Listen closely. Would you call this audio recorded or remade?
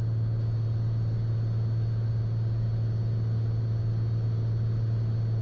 recorded